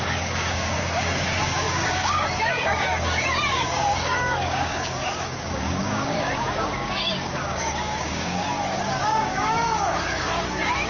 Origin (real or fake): fake